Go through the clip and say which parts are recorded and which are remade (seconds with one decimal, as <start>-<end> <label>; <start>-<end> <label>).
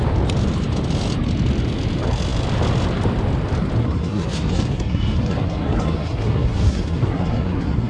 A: 0.0-3.8 recorded; 3.8-7.9 remade